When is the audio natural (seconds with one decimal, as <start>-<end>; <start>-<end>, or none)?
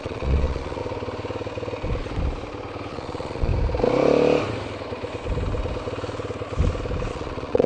0.8-2.9; 3.5-7.1